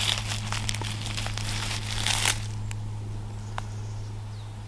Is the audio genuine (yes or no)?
yes